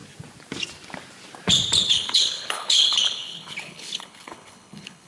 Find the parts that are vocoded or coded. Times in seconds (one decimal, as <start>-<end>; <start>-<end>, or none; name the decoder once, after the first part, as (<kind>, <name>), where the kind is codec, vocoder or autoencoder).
1.8-5.1 (codec, HILCodec)